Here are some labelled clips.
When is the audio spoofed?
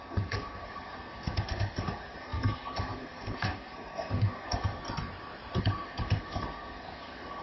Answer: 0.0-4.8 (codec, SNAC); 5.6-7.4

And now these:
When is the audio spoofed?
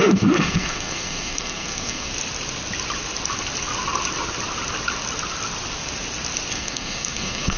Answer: 0.0-2.1 (codec, SNAC); 6.5-7.6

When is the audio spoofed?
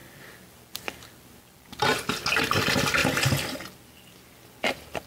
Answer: none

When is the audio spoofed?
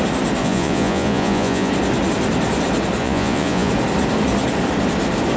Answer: 0.4-1.7 (vocoder, Vocos); 3.0-3.7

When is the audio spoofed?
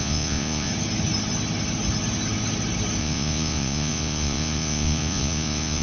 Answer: 0.0-0.7 (vocoder, Vocos); 3.0-5.8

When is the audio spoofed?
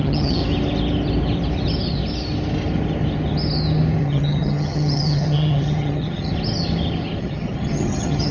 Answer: 0.0-0.4 (vocoder, HiFi-GAN); 4.0-6.3; 7.2-8.3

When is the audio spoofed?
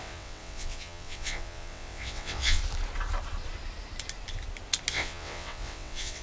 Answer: 0.0-2.6 (vocoder, WaveNeXt); 4.9-6.2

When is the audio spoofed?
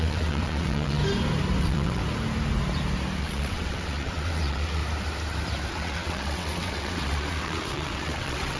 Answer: 0.0-1.0 (vocoder, WaveNeXt); 1.6-2.0; 3.2-4.8; 5.7-8.6